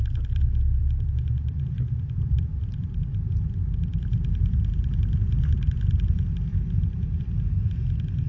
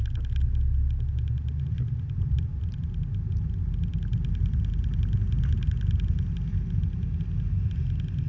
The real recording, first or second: second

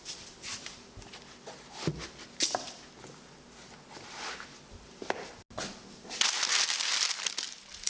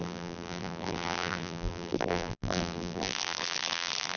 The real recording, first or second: first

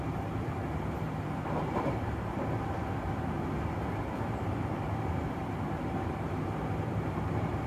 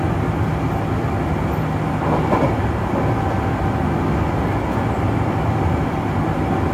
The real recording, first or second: second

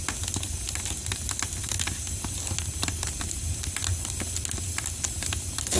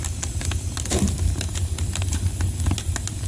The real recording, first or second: second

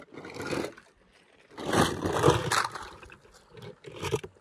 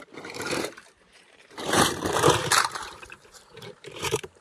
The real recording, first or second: first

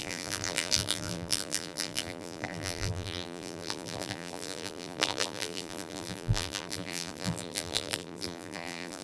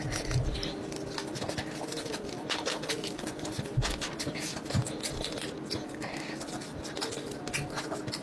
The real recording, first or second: second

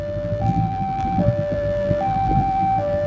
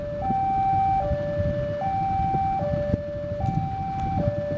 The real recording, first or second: second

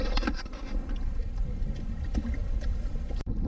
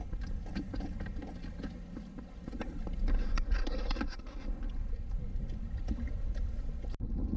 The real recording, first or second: second